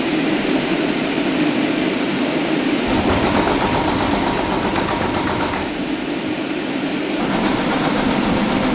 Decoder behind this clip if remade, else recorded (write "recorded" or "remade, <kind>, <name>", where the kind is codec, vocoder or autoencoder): remade, vocoder, BigVGAN v2